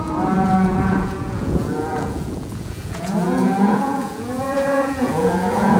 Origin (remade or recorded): remade